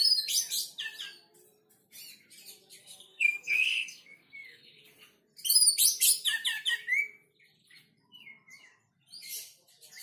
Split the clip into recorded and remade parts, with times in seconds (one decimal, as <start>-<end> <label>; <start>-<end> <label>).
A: 0.0-2.8 recorded; 2.8-4.8 remade; 4.8-10.0 recorded